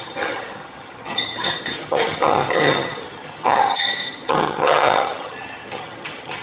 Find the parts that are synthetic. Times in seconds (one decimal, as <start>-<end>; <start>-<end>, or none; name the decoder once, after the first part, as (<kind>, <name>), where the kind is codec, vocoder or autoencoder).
0.0-6.4 (vocoder, HiFi-GAN)